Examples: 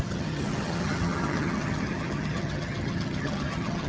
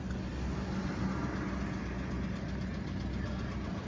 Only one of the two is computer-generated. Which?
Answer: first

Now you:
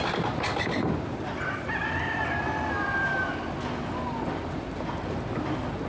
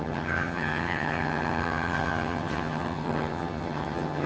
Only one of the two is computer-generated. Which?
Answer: second